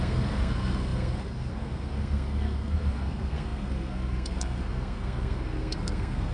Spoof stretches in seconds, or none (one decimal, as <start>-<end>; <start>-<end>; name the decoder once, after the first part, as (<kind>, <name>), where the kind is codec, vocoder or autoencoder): 0.0-6.3 (codec, SNAC)